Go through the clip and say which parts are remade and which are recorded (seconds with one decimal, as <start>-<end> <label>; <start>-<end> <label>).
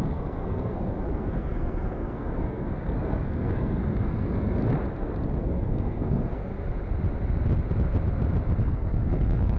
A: 0.0-4.6 remade; 4.6-5.4 recorded; 5.4-6.5 remade; 6.5-8.6 recorded; 8.6-9.6 remade